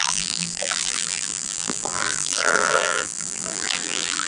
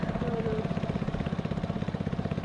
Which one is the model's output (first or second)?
first